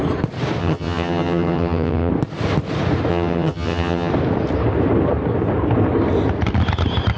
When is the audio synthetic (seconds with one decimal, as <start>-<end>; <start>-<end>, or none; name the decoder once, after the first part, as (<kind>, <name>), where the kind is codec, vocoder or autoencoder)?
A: 0.6-2.1 (vocoder, HiFi-GAN); 3.1-4.1